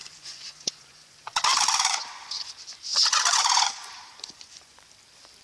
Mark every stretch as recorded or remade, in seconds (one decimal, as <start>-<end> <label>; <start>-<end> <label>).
0.0-2.5 remade; 2.5-2.9 recorded; 2.9-4.9 remade; 4.9-5.4 recorded